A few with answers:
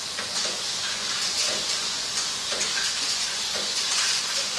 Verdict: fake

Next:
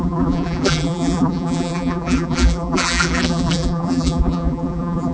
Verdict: fake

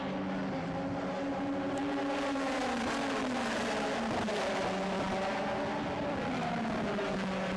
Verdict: real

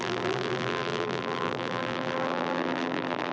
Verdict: fake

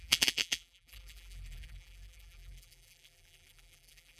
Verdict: fake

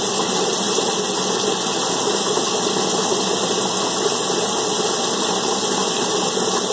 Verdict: real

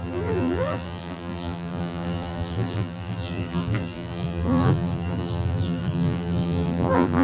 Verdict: fake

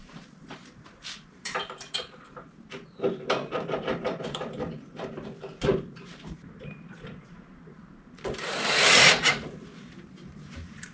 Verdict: fake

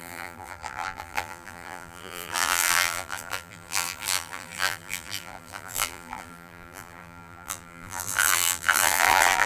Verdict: fake